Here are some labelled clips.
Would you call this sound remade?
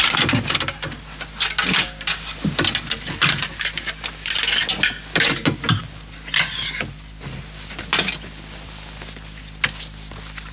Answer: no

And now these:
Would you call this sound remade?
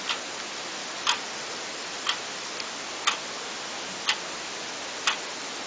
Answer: no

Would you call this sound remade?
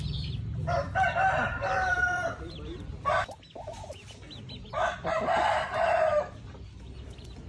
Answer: yes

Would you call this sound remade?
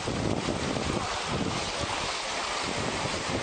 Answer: no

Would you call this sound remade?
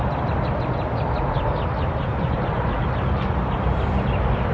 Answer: no